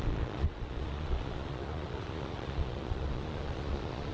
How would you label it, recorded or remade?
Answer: remade